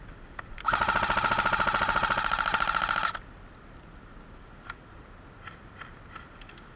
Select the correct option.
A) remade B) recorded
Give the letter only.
B